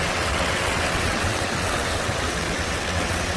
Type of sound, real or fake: fake